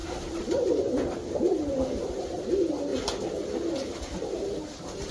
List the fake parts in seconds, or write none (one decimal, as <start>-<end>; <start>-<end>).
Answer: 0.0-0.9